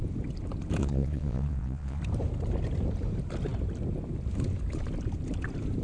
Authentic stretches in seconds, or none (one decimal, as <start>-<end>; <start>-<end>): 0.0-0.8; 2.0-5.8